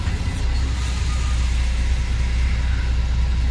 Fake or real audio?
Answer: real